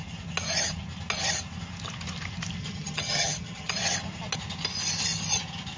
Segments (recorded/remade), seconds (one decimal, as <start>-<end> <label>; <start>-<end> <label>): 0.0-2.6 recorded; 2.6-3.7 remade; 3.7-5.8 recorded